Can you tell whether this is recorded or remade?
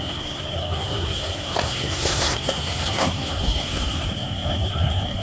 remade